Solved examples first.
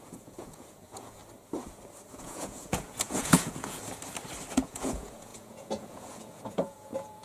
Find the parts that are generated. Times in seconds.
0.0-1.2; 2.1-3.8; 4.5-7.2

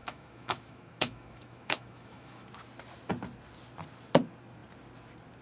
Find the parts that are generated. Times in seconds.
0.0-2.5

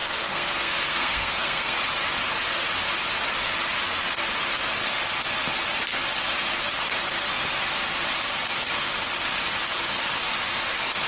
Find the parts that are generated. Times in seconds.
0.0-1.8